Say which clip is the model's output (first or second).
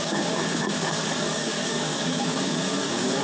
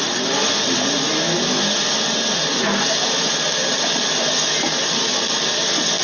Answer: first